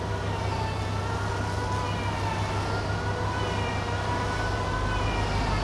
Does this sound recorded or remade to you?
recorded